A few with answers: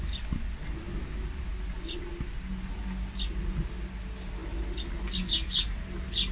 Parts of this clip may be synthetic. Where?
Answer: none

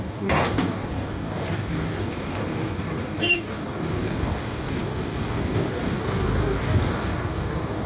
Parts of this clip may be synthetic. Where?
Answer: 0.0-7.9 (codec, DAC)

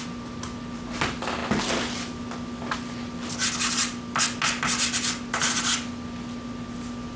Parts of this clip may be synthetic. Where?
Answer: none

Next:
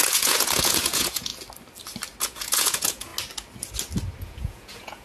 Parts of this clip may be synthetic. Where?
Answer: 0.0-1.3 (vocoder, Vocos); 2.2-3.1; 4.2-5.0

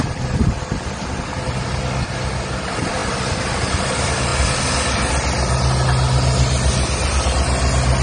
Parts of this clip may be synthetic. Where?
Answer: none

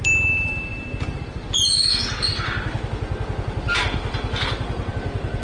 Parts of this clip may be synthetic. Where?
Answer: none

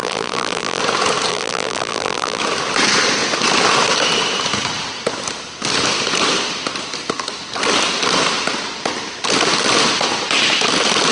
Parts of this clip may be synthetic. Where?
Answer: 0.0-0.8 (vocoder, BigVGAN v2); 1.3-2.4

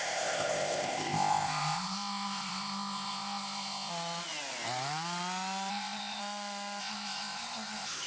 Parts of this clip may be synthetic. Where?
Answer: 0.0-3.9 (codec, ZipCodec); 5.7-6.2; 6.8-8.1